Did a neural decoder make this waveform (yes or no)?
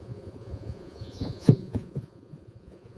yes